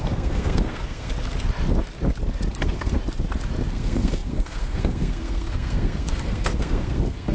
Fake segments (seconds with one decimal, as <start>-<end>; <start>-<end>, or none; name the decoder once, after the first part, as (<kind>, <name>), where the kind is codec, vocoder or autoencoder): 0.0-1.1 (codec, SNAC); 2.5-3.0; 3.7-7.3

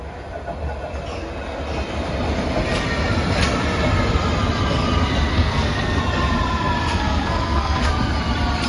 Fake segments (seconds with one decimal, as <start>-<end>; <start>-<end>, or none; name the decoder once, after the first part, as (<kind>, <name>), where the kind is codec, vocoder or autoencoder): 5.3-6.0 (codec, SNAC); 6.9-7.9